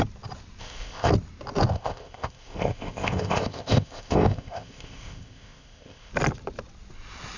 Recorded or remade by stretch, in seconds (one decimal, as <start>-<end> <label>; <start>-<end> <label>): 0.0-0.6 recorded; 0.6-1.1 remade; 1.1-1.7 recorded; 1.7-6.1 remade; 6.1-7.4 recorded